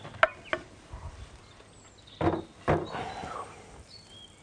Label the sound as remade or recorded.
recorded